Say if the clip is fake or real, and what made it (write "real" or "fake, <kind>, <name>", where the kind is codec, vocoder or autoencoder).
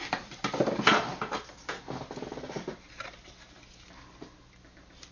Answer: real